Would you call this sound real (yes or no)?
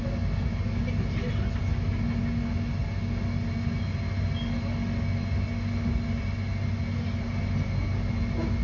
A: yes